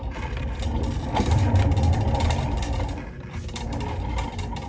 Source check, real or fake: real